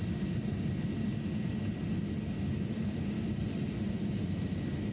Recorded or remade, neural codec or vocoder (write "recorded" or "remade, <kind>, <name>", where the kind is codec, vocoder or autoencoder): recorded